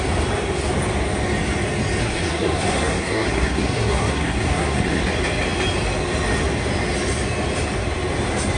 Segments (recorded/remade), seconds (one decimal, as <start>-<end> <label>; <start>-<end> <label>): 0.0-2.0 recorded; 2.0-5.0 remade; 5.0-8.6 recorded